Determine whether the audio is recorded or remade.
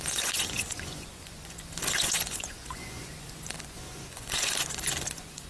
remade